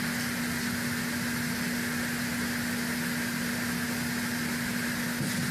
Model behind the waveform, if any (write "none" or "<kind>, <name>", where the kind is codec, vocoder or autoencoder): none